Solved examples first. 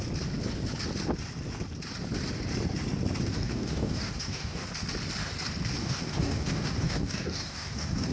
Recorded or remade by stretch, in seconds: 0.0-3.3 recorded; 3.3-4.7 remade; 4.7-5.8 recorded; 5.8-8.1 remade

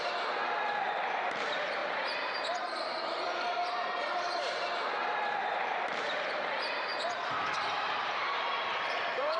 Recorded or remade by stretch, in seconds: 0.0-6.9 remade; 6.9-7.5 recorded; 7.5-9.4 remade

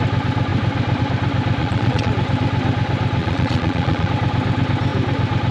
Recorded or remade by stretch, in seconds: 0.0-1.6 recorded; 1.6-2.1 remade; 2.1-3.2 recorded; 3.2-4.1 remade; 4.1-5.5 recorded

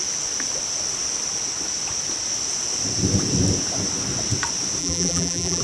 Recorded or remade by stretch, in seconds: 0.0-4.8 recorded; 4.8-5.6 remade

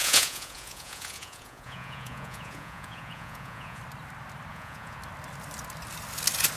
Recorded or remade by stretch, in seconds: 0.0-3.8 remade; 3.8-4.5 recorded; 4.5-5.0 remade; 5.0-6.6 recorded

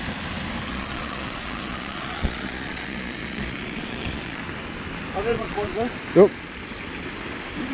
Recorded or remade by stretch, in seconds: 0.0-0.7 recorded; 0.7-4.4 remade; 4.4-5.3 recorded; 5.3-5.9 remade; 5.9-7.7 recorded

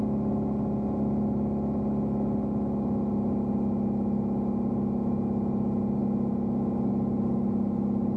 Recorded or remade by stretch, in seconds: 0.0-8.2 recorded

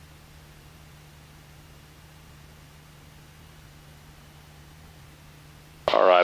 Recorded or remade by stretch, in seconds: 0.0-6.2 recorded